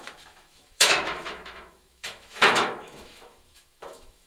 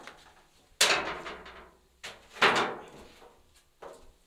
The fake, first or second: first